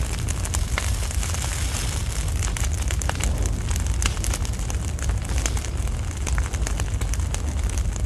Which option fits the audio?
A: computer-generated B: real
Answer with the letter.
B